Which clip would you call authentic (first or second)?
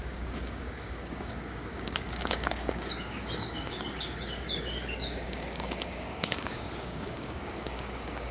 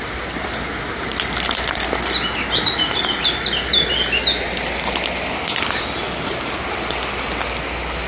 second